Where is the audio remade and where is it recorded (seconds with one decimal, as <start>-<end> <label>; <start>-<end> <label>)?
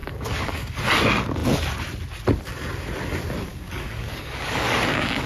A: 0.0-0.8 remade; 0.8-3.5 recorded; 3.5-5.3 remade